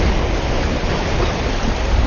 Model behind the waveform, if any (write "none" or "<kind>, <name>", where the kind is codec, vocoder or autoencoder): none